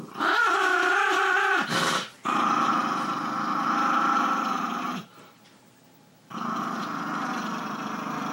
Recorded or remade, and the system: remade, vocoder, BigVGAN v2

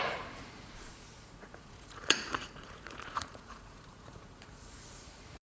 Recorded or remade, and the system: remade, vocoder, Vocos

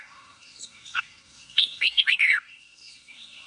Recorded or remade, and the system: remade, codec, SNAC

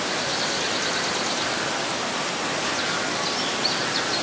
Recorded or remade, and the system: recorded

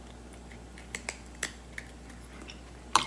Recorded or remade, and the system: recorded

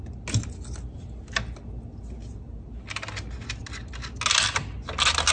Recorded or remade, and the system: recorded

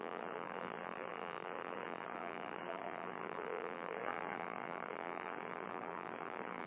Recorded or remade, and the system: remade, vocoder, BigVGAN v2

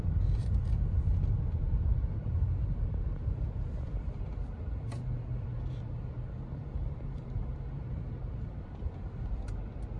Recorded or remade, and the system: remade, vocoder, BigVGAN v2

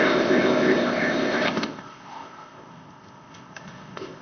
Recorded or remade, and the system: remade, codec, ZipCodec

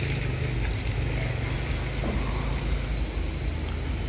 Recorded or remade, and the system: recorded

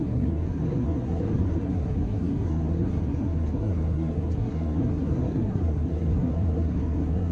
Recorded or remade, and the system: remade, codec, SNAC